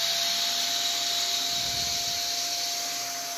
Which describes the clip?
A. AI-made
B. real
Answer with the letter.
B